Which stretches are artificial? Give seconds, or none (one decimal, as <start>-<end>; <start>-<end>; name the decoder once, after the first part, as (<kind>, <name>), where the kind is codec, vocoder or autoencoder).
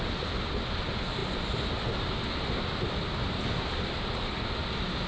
none